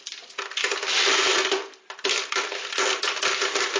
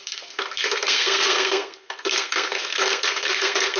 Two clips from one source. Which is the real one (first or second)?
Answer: first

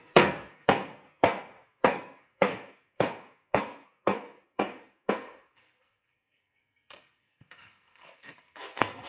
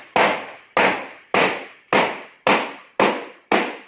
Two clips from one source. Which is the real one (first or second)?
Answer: second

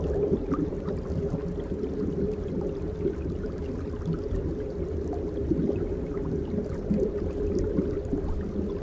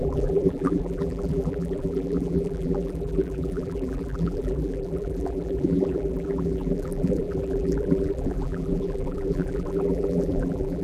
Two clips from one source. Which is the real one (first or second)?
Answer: first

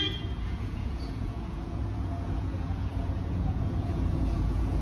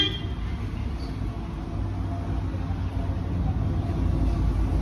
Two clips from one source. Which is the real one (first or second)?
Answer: second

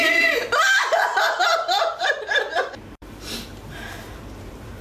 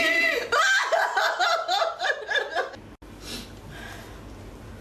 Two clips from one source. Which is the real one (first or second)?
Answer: second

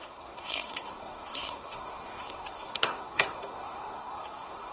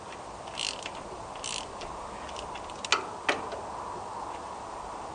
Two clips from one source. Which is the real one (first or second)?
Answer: second